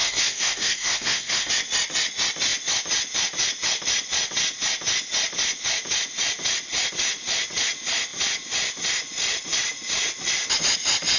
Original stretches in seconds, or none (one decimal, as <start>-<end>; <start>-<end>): 1.5-11.2